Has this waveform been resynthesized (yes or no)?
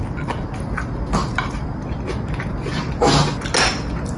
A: no